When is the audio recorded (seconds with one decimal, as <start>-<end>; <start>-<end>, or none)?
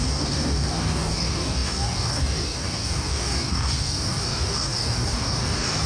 none